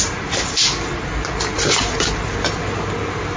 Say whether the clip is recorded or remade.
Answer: recorded